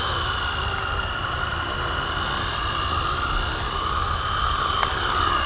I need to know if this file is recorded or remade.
recorded